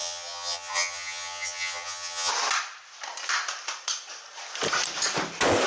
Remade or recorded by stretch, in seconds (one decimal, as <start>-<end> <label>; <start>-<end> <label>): 0.0-2.3 remade; 2.3-5.7 recorded

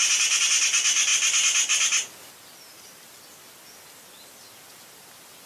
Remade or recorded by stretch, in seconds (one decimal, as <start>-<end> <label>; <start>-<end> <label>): 0.0-5.5 recorded

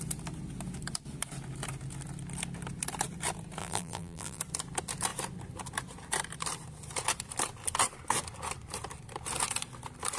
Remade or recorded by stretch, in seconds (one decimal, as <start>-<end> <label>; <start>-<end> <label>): 0.0-3.6 recorded; 3.6-4.4 remade; 4.4-10.2 recorded